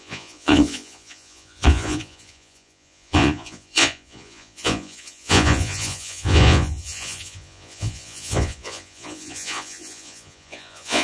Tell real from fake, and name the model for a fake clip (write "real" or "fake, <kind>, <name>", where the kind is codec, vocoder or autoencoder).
fake, vocoder, Vocos